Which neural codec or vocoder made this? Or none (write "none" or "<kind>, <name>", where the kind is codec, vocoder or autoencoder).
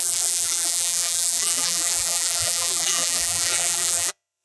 vocoder, BigVGAN v2